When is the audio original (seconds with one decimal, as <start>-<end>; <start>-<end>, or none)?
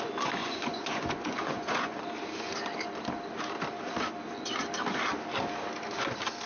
0.0-0.4; 2.0-6.5